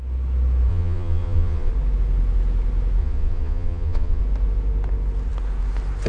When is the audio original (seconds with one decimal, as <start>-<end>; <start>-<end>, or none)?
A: 0.0-0.7; 1.7-3.0; 4.2-6.1